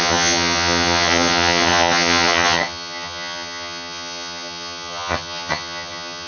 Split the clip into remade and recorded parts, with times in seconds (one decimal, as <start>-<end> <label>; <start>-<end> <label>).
0.0-6.3 remade

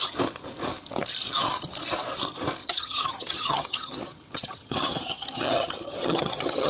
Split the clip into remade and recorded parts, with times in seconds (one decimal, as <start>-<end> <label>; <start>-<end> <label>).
0.0-2.6 recorded; 2.6-6.7 remade

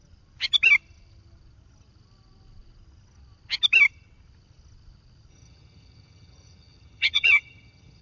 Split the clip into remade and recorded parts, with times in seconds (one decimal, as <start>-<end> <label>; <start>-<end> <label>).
0.0-5.3 recorded; 5.3-8.0 remade

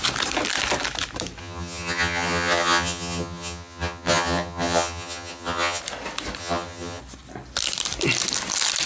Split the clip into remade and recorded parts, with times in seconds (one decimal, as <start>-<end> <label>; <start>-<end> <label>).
0.0-1.4 recorded; 1.4-5.8 remade; 5.8-6.4 recorded; 6.4-7.0 remade; 7.0-8.9 recorded

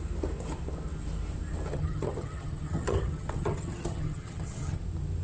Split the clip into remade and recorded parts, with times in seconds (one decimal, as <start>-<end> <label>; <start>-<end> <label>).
0.0-1.7 recorded; 1.7-4.8 remade; 4.8-5.2 recorded

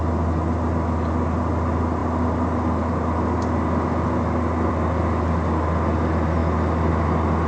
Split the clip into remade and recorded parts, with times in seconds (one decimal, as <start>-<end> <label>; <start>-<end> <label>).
0.0-7.5 recorded